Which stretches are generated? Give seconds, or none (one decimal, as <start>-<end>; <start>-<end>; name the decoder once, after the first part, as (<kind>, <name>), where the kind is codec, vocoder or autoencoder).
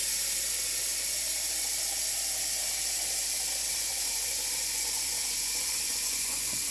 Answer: 3.7-6.7 (vocoder, Vocos)